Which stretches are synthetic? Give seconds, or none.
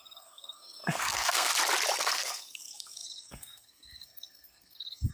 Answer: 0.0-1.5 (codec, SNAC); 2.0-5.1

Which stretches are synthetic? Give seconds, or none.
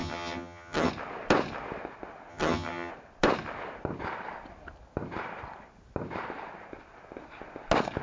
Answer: 0.0-0.9 (vocoder, HiFi-GAN); 2.3-2.9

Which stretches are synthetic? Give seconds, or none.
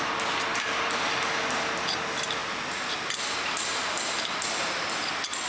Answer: 0.5-1.3 (vocoder, BigVGAN v2)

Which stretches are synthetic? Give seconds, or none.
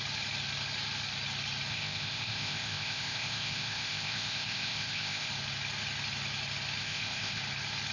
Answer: 1.7-5.3 (codec, ZipCodec); 6.8-7.4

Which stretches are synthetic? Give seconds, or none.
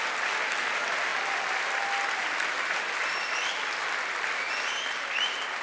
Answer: none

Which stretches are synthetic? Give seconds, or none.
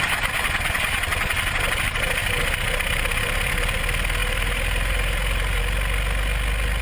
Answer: 2.2-3.8 (vocoder, BigVGAN v2); 4.2-5.6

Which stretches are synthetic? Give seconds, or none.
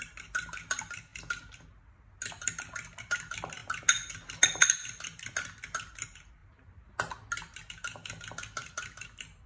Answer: none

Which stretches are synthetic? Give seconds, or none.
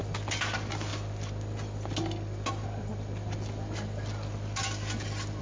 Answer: none